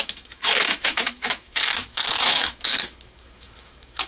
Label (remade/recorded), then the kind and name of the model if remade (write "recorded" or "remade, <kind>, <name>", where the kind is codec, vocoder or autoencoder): remade, autoencoder, DAC-VAE